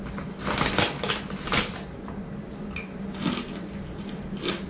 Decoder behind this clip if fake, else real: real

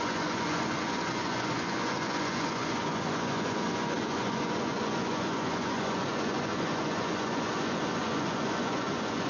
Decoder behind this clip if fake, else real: fake, vocoder, Vocos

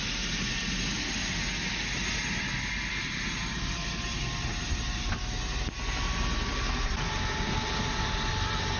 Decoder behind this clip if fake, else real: real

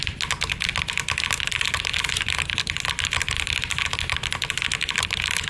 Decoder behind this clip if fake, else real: real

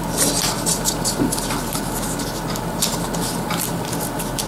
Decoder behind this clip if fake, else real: real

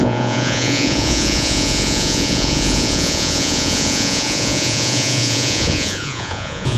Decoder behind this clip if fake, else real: fake, vocoder, Vocos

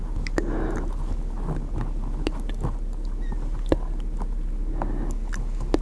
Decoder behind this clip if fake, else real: real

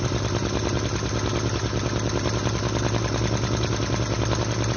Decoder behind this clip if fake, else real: real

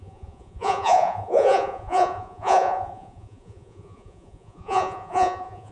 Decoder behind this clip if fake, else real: fake, vocoder, Vocos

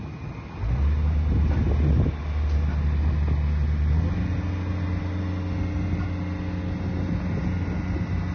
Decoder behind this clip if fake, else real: real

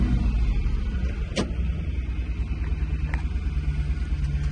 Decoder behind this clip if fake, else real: real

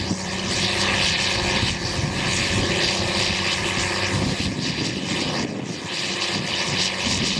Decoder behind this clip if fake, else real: real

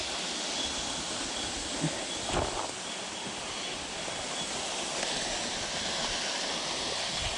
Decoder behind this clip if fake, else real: real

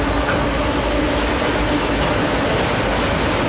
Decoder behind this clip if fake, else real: real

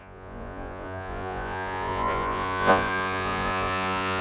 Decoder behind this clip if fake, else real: fake, vocoder, Vocos